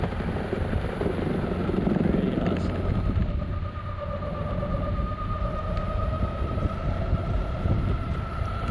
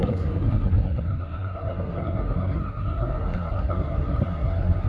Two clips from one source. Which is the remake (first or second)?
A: second